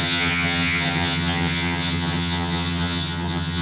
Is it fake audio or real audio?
fake